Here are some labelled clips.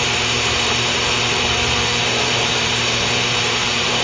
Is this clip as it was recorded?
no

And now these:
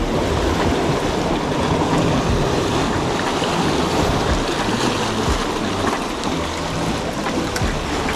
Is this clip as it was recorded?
yes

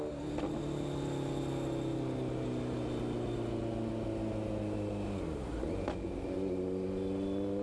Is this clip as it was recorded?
yes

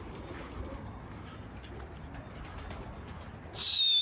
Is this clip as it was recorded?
yes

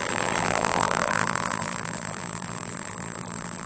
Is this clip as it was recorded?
no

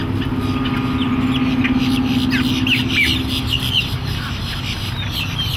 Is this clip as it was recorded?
yes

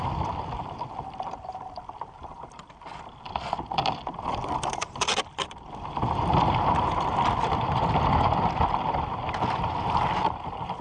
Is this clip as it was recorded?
no